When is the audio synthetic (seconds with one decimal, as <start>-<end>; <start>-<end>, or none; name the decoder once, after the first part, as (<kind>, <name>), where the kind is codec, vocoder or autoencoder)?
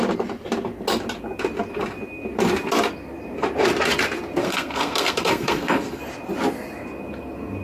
4.4-6.0 (codec, SNAC)